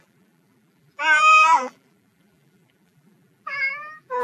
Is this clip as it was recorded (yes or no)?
no